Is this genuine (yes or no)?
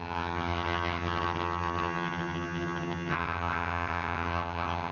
no